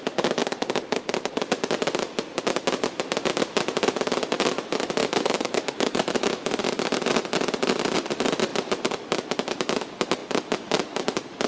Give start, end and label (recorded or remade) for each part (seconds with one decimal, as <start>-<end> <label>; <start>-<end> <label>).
0.0-5.0 recorded; 5.0-6.5 remade; 6.5-11.5 recorded